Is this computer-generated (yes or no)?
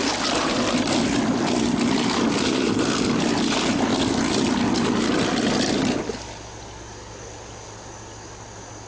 no